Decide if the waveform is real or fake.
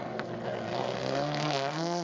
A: fake